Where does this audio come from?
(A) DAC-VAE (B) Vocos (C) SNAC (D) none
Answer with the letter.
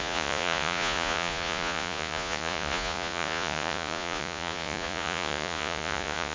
B